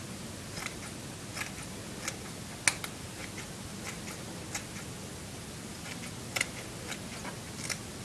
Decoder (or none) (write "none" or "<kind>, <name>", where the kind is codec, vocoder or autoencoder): none